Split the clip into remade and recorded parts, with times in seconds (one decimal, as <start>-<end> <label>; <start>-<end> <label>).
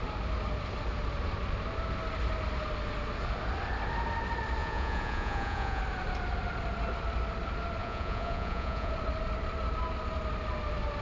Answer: 0.0-4.6 recorded; 4.6-5.8 remade; 5.8-7.8 recorded; 7.8-8.9 remade; 8.9-11.0 recorded